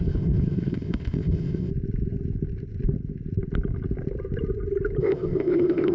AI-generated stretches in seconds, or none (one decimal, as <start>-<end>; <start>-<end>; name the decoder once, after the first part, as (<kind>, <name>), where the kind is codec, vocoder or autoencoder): 0.0-1.7 (codec, ZipCodec); 5.0-5.9